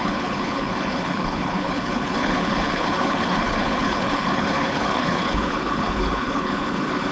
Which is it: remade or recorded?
remade